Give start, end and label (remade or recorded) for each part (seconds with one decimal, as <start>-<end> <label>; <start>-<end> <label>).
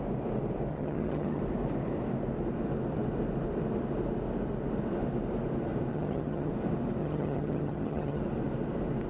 0.0-0.7 recorded; 0.7-1.4 remade; 1.4-5.9 recorded; 5.9-6.5 remade; 6.5-7.0 recorded; 7.0-8.2 remade; 8.2-9.1 recorded